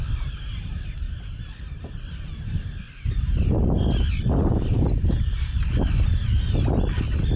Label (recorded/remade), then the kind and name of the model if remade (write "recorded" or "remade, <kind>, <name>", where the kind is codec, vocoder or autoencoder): recorded